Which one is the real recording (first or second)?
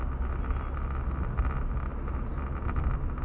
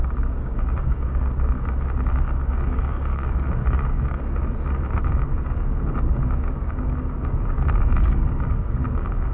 first